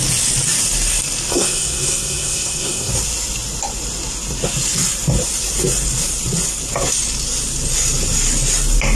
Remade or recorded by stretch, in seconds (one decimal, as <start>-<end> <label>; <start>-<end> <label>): 0.0-1.3 recorded; 1.3-2.9 remade; 2.9-8.9 recorded